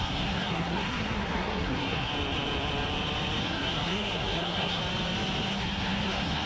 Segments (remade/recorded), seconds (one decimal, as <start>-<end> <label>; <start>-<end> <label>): 0.0-2.1 remade; 2.1-3.4 recorded; 3.4-4.8 remade; 4.8-5.5 recorded; 5.5-6.5 remade